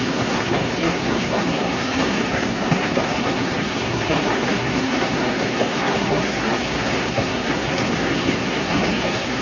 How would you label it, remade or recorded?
remade